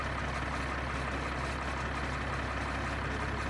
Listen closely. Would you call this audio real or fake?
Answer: real